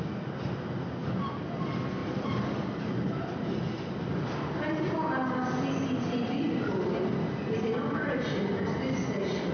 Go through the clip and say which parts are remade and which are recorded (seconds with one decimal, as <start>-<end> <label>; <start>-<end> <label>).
0.0-1.0 recorded; 1.0-1.6 remade; 1.6-2.0 recorded; 2.0-2.8 remade; 2.8-9.5 recorded